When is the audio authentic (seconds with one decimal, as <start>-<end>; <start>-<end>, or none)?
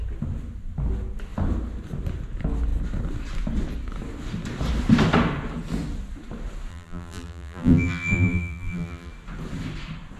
0.0-6.7; 9.1-10.2